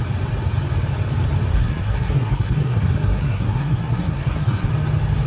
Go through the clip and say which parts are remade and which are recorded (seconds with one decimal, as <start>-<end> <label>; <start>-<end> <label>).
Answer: 0.0-1.5 recorded; 1.5-4.7 remade; 4.7-5.3 recorded